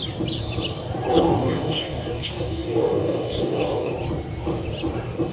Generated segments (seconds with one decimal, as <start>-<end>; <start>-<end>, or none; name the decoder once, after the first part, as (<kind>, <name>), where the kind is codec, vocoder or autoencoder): 1.1-3.9 (codec, DAC)